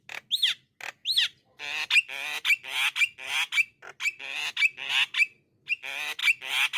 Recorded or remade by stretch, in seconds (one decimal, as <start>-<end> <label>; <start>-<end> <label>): 0.0-6.8 recorded